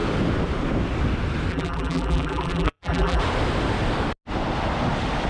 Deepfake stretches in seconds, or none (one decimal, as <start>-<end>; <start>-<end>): 1.5-3.2